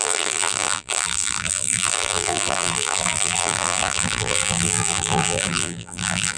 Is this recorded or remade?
remade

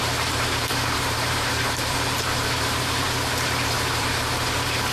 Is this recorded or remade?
remade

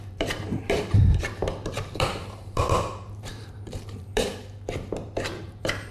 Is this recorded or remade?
remade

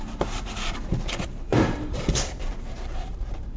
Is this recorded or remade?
remade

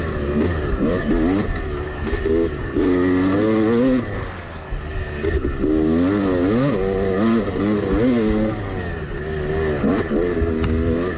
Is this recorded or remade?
recorded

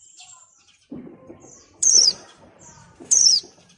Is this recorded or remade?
remade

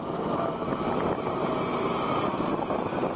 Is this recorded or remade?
remade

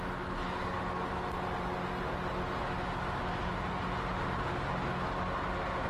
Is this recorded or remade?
recorded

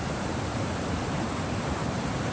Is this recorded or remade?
remade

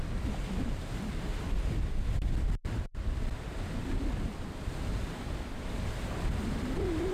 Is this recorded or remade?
remade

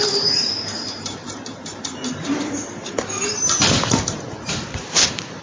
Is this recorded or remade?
remade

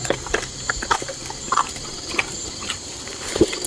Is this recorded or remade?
remade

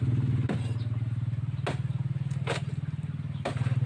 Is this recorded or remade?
recorded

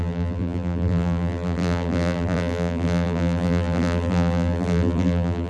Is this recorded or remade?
remade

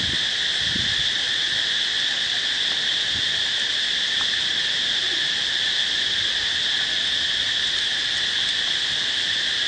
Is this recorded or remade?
recorded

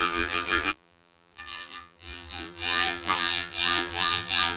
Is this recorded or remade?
remade